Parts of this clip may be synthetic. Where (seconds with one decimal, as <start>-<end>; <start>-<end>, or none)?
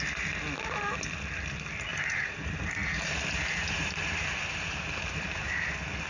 1.9-5.6